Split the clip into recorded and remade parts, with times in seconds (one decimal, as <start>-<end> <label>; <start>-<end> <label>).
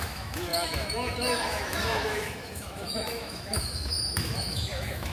0.0-5.1 remade